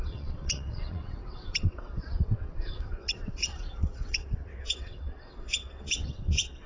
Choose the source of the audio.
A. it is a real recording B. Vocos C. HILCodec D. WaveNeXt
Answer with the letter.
D